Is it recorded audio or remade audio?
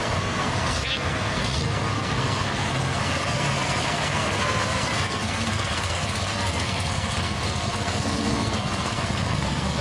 remade